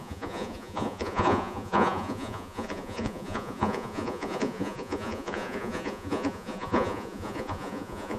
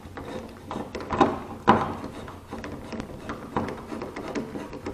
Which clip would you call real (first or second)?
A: second